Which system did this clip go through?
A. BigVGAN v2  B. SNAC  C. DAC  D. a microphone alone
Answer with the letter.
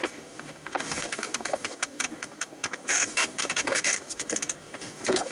C